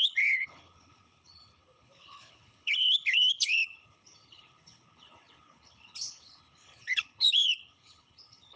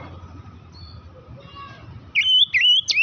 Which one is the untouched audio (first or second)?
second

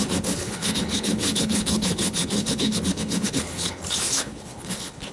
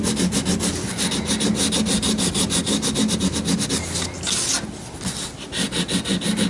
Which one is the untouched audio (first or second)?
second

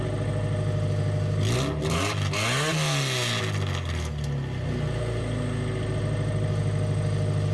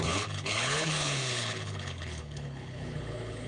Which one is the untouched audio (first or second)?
first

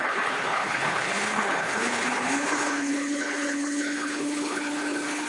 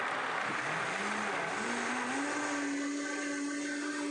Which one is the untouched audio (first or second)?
second